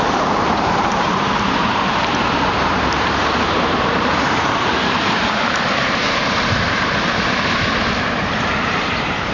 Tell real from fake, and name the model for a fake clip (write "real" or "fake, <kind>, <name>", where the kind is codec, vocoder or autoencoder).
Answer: fake, vocoder, BigVGAN v2